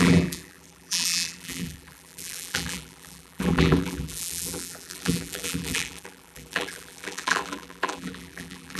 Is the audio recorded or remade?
remade